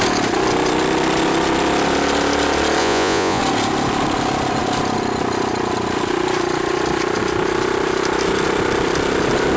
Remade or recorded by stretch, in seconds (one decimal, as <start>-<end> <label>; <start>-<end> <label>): 0.0-2.8 recorded; 2.8-3.4 remade; 3.4-9.6 recorded